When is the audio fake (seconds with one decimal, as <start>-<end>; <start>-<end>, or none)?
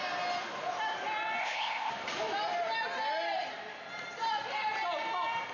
1.4-1.9